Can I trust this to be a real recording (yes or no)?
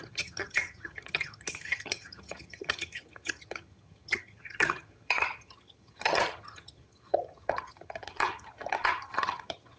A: no